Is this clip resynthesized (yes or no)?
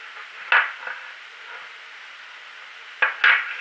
no